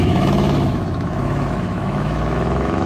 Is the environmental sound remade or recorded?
remade